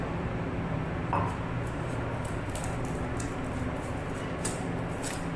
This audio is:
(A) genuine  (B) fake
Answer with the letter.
A